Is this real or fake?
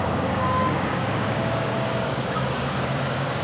fake